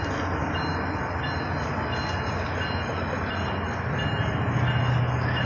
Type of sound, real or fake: real